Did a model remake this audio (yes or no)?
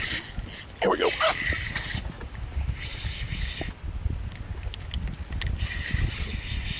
no